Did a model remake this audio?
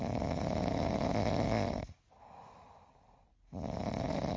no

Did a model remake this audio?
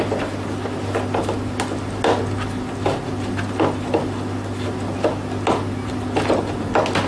no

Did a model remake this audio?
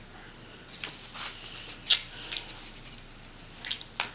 no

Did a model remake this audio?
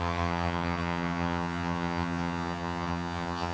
yes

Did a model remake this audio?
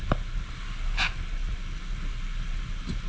no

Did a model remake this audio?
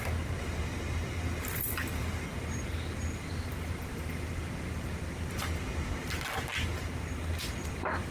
no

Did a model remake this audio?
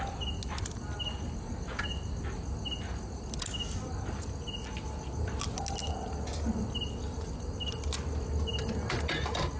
no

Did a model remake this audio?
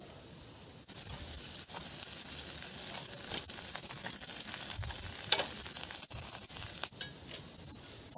no